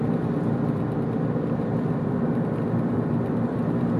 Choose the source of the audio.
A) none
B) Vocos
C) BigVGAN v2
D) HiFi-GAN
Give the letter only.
C